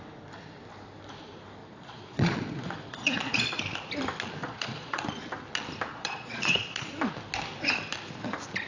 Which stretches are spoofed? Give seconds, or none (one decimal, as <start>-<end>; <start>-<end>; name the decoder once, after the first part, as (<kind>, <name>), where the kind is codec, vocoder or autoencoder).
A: 1.6-3.6 (vocoder, Vocos); 4.4-5.0; 5.9-6.9